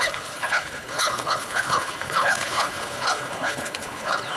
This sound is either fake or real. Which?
fake